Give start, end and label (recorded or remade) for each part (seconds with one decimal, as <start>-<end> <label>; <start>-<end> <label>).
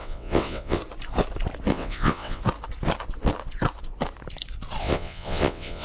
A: 0.0-0.8 remade; 0.8-1.7 recorded; 1.7-2.4 remade; 2.4-4.8 recorded; 4.8-5.8 remade